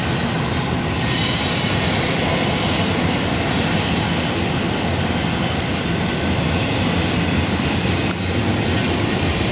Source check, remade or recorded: recorded